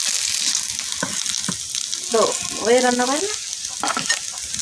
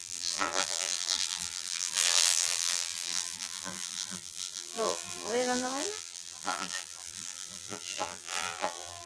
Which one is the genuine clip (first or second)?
first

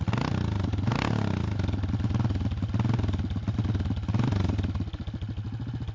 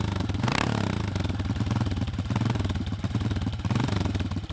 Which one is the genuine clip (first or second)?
first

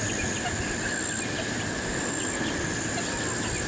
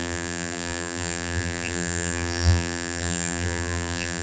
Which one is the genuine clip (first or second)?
first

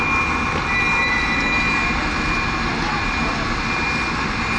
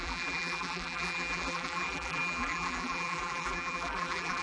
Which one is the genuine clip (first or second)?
first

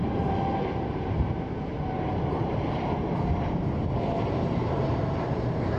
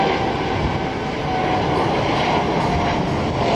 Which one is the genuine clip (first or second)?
second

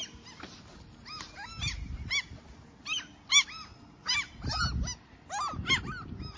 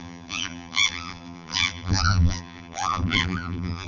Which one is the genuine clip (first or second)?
first